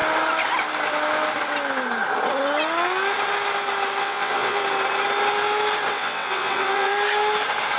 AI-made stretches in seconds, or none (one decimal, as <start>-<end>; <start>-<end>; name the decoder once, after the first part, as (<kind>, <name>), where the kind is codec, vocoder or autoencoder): 4.0-4.6 (vocoder, WaveNeXt); 5.9-6.9